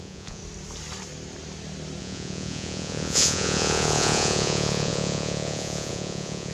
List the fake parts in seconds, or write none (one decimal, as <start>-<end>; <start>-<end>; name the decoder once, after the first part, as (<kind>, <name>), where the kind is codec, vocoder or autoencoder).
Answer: 0.0-0.4 (vocoder, Vocos); 2.0-6.5